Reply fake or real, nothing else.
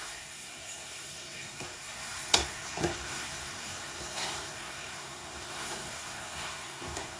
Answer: fake